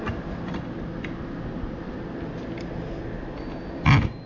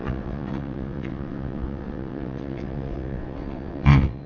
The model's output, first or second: second